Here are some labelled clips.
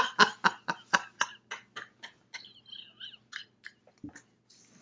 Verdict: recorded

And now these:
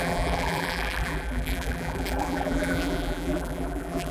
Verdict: remade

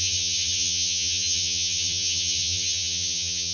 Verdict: remade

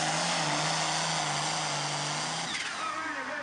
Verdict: recorded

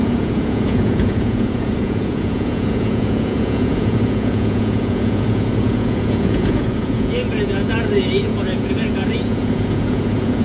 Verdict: remade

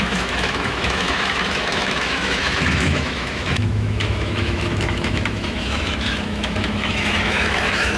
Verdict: remade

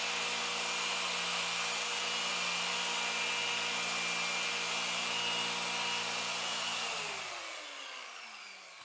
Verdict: recorded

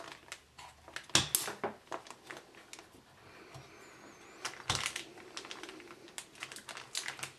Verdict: recorded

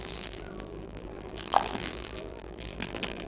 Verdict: remade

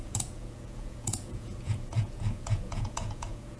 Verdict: remade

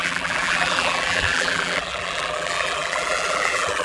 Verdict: remade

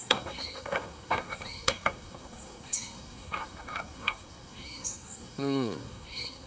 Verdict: remade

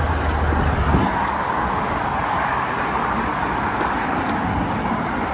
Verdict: recorded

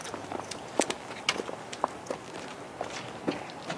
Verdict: recorded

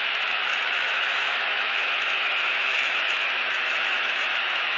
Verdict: remade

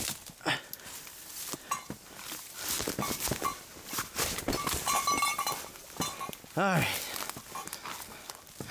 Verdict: recorded